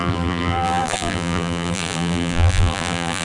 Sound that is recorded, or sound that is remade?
remade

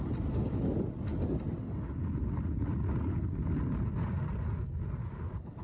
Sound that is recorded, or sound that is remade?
recorded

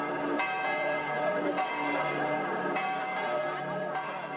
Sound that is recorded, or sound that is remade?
remade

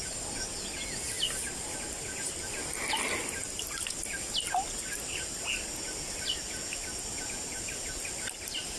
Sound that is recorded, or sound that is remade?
recorded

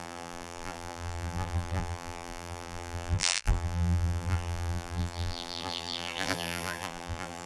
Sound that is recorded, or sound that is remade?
remade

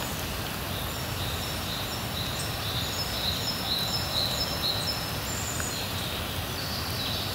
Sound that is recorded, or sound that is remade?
recorded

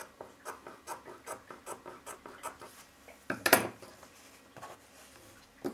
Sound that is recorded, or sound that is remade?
recorded